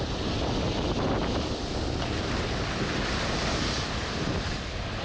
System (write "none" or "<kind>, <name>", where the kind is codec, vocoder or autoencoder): none